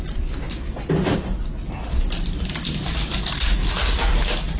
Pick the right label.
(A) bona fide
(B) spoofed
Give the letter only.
A